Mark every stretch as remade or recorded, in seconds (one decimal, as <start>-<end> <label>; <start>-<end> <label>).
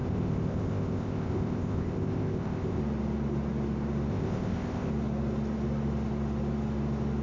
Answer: 0.0-2.8 remade; 2.8-4.1 recorded; 4.1-4.9 remade; 4.9-7.2 recorded